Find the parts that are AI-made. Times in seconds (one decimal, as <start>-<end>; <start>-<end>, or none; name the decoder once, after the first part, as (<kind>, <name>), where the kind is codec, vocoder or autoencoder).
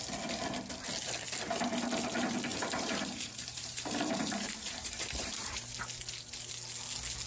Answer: 2.5-5.7 (vocoder, BigVGAN v2)